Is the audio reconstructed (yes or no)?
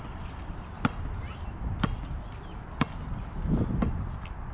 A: no